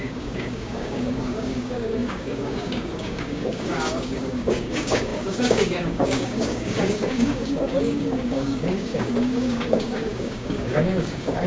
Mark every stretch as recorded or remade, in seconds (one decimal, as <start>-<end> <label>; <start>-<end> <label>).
0.0-11.5 remade